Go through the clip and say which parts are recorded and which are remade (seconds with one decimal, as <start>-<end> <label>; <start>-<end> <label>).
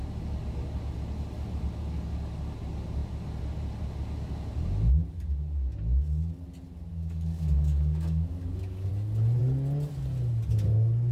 0.0-6.9 recorded; 6.9-8.9 remade; 8.9-11.1 recorded